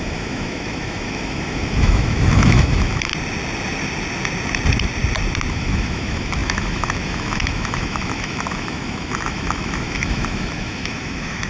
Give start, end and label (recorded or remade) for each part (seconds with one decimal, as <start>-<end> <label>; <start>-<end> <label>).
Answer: 0.0-3.1 remade; 3.1-5.5 recorded; 5.5-11.5 remade

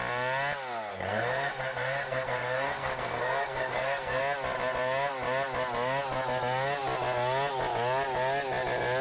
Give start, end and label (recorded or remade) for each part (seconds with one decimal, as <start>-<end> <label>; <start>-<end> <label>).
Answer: 0.0-0.9 recorded; 0.9-4.2 remade; 4.2-9.0 recorded